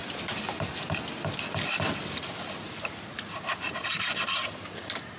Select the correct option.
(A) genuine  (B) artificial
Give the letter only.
A